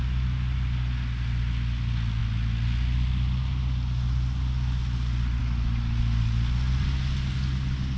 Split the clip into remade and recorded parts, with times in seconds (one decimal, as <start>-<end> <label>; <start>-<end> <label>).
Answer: 0.0-8.0 recorded